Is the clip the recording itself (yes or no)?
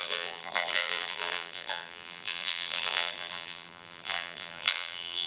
no